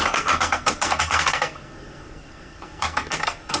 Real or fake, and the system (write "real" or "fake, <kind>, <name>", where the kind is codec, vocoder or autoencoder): fake, codec, SNAC